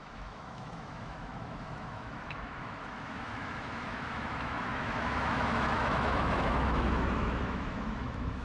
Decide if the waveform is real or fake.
fake